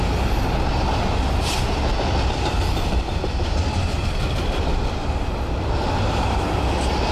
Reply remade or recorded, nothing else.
recorded